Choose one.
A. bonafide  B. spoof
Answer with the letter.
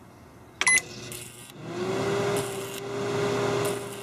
A